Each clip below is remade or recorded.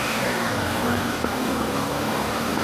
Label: remade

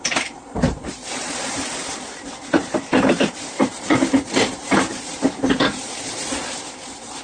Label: remade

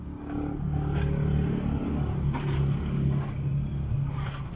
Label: recorded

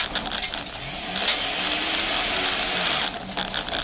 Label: recorded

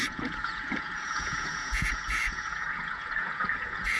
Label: remade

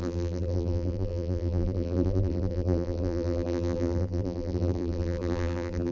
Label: remade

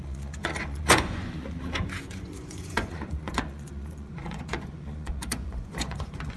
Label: remade